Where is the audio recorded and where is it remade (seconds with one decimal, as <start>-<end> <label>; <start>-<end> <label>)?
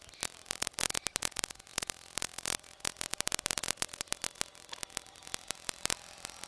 0.0-6.5 recorded